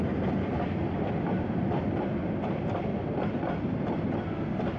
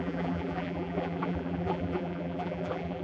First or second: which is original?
first